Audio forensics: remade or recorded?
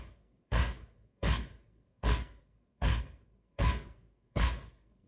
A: remade